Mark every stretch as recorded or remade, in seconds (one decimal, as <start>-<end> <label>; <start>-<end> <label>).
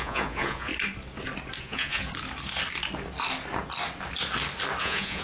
0.0-0.7 remade; 0.7-1.6 recorded; 1.6-2.1 remade; 2.1-4.8 recorded; 4.8-5.2 remade